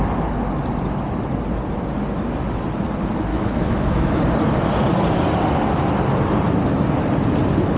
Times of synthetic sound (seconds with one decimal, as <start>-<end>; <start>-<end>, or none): 3.3-4.2